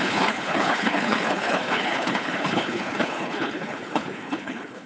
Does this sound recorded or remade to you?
remade